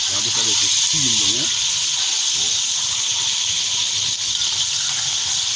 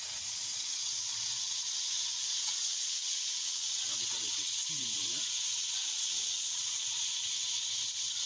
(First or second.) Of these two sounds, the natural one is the first